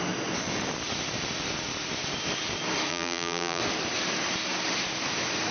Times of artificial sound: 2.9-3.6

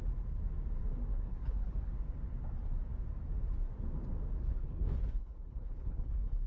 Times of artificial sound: 1.1-1.9; 4.5-6.5